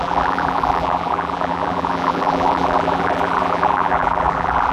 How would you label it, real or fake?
fake